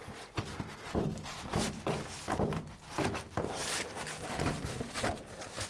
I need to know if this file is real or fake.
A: fake